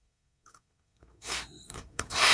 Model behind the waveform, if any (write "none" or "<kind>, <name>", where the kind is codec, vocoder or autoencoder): codec, SNAC